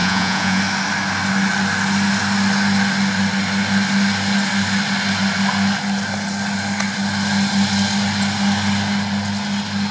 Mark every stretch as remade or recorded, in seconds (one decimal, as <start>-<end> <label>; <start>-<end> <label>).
0.0-0.6 remade; 0.6-9.9 recorded